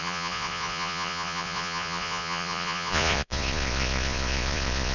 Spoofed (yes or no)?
yes